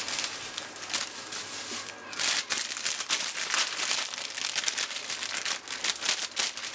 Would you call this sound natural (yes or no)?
yes